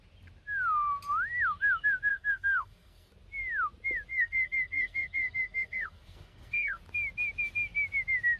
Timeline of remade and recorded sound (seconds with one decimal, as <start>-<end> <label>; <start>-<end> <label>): 0.0-2.1 recorded; 2.1-3.1 remade; 3.1-4.1 recorded; 4.1-6.8 remade; 6.8-8.4 recorded

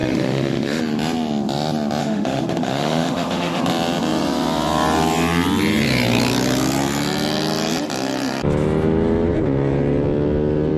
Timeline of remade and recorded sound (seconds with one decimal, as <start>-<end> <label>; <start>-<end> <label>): 0.0-0.8 remade; 0.8-2.0 recorded; 2.0-3.6 remade; 3.6-10.8 recorded

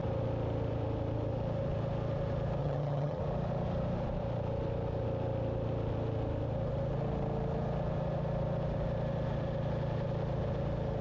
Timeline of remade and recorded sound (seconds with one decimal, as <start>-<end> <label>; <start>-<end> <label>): 0.0-2.6 recorded; 2.6-3.2 remade; 3.2-11.0 recorded

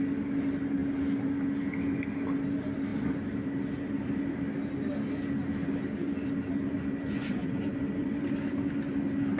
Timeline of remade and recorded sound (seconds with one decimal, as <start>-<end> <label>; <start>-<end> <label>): 0.0-7.0 recorded; 7.0-7.6 remade; 7.6-9.4 recorded

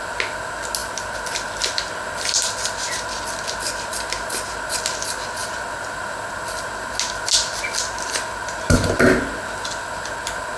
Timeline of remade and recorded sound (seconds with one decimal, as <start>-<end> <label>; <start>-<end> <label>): 0.0-10.6 recorded